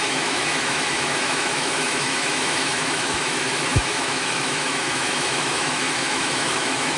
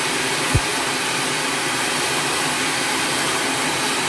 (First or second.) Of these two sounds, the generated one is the first